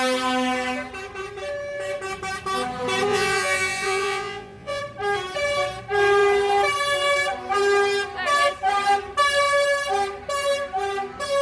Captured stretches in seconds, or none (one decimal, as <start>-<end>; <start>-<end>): 0.0-3.1; 4.8-11.4